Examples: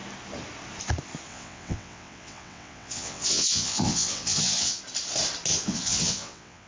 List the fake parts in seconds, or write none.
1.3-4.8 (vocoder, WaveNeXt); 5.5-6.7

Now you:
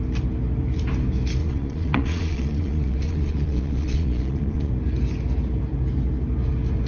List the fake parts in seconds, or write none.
1.4-4.7 (vocoder, Vocos)

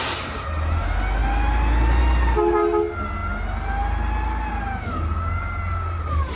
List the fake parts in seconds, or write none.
none

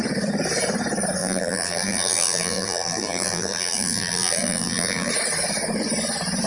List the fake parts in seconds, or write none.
1.2-5.1 (vocoder, BigVGAN v2)

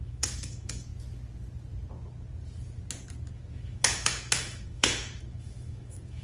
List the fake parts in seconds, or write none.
0.0-0.9 (autoencoder, DAC-VAE); 3.4-6.2